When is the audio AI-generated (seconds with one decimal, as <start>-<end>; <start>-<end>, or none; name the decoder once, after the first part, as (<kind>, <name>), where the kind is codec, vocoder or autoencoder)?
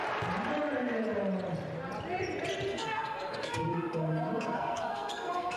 2.7-5.6 (codec, SNAC)